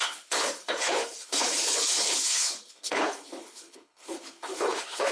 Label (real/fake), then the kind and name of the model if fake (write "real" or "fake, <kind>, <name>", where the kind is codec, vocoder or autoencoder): fake, codec, HILCodec